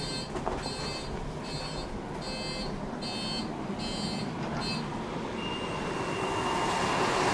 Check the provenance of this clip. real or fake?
real